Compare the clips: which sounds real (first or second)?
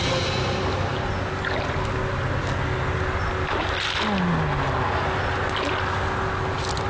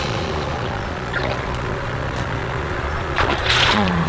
first